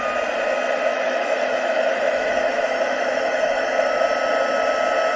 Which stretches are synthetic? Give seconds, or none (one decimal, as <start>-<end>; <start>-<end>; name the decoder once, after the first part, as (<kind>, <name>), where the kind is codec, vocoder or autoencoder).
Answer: 0.9-4.0 (autoencoder, DAC-VAE)

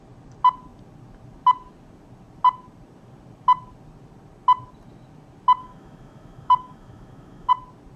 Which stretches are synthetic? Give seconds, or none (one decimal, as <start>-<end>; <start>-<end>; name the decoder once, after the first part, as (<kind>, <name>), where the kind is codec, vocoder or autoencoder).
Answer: 5.6-7.5 (autoencoder, DAC-VAE)

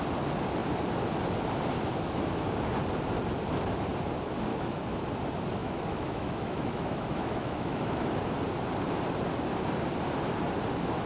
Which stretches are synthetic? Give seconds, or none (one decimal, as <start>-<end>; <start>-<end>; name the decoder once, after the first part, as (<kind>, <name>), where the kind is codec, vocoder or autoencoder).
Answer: 4.5-5.1 (autoencoder, DAC-VAE); 5.6-8.1

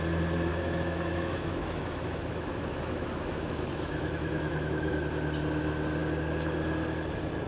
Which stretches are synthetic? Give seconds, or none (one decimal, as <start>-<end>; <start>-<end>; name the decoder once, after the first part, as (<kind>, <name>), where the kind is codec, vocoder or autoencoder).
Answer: 0.5-5.0 (autoencoder, DAC-VAE)

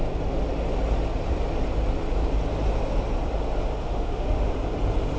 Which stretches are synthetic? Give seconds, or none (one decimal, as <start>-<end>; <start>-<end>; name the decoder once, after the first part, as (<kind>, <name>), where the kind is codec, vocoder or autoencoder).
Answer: 3.8-4.5 (autoencoder, DAC-VAE)

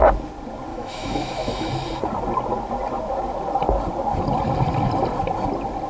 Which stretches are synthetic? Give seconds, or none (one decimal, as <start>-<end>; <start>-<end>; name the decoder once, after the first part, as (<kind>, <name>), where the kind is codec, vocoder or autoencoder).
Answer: 0.7-1.7 (autoencoder, DAC-VAE)

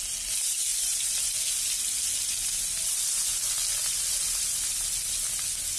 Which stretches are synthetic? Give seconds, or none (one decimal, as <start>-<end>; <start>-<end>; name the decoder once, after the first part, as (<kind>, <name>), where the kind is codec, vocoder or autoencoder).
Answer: none

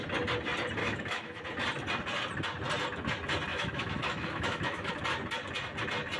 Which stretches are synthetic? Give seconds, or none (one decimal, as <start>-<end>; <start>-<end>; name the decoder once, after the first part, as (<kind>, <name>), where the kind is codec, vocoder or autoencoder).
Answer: 0.8-1.4 (autoencoder, DAC-VAE); 3.5-4.9